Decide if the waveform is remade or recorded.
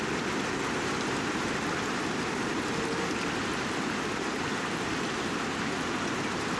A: recorded